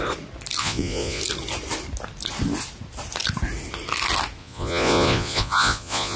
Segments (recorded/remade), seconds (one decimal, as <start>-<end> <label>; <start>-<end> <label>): 0.0-0.6 recorded; 0.6-1.2 remade; 1.2-4.4 recorded; 4.4-6.2 remade